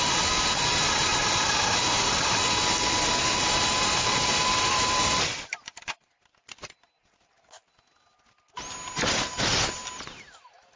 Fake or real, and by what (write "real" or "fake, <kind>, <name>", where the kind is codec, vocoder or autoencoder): real